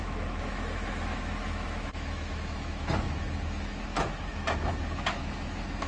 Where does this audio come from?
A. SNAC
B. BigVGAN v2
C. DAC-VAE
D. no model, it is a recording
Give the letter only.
C